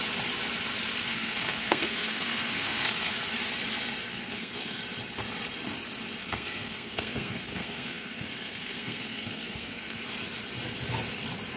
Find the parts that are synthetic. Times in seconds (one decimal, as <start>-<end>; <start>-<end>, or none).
1.1-3.1; 4.1-4.8; 6.2-10.0

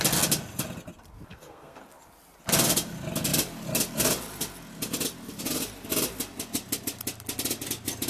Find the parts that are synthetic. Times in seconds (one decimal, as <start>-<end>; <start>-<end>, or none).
1.3-1.8

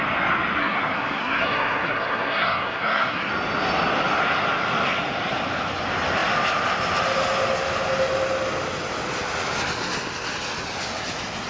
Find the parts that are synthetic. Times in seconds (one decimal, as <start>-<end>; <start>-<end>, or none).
0.6-3.3

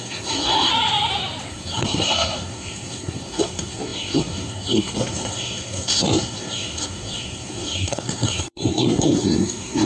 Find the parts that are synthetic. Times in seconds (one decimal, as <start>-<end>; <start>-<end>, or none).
0.0-0.7; 1.5-9.9